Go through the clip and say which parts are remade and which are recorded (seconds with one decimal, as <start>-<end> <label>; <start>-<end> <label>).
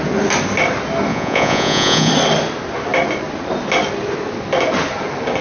0.0-1.1 recorded; 1.1-2.1 remade; 2.1-5.4 recorded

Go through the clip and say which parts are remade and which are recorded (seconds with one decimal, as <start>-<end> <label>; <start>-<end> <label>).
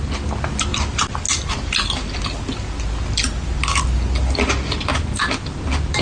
0.0-6.0 recorded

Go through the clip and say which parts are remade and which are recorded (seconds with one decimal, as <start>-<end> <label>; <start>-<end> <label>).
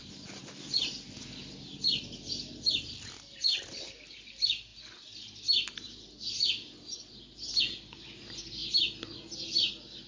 0.0-10.1 recorded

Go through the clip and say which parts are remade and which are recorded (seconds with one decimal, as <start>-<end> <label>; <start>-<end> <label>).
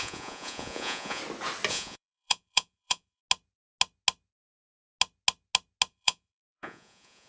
0.0-1.2 remade; 1.2-1.7 recorded; 1.7-3.2 remade; 3.2-5.9 recorded; 5.9-7.3 remade